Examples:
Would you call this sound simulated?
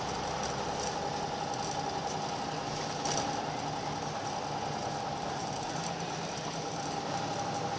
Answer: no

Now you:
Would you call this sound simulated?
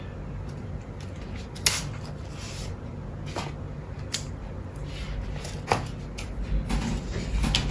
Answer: no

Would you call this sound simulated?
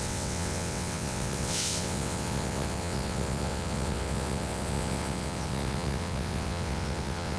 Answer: yes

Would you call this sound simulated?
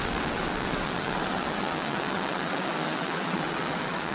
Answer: yes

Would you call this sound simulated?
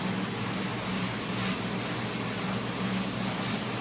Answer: no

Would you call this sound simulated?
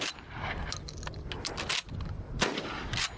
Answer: no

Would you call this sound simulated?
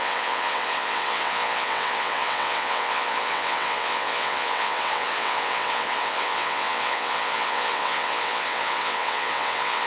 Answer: yes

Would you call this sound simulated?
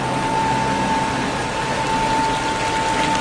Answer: no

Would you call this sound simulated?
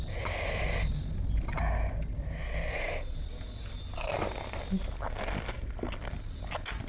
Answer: no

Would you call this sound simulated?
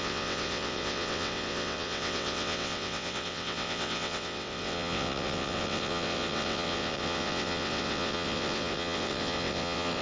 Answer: yes